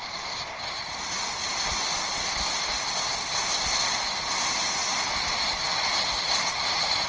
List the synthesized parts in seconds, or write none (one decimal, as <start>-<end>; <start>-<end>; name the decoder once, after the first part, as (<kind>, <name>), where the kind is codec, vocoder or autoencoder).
none